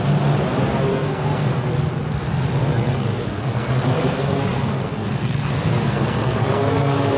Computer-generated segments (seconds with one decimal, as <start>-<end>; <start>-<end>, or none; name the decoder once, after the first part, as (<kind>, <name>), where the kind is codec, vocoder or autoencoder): 0.9-1.7 (codec, SNAC); 2.6-7.2